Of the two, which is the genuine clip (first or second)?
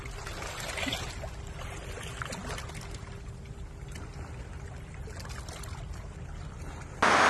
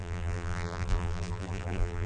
first